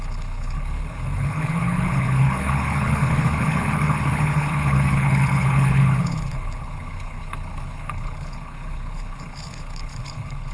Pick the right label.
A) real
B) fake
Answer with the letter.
B